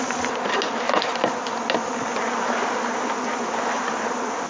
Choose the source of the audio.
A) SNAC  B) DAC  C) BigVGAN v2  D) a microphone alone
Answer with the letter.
D